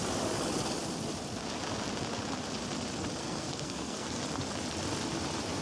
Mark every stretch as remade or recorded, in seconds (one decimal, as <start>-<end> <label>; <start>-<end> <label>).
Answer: 0.0-3.2 recorded; 3.2-4.2 remade; 4.2-5.6 recorded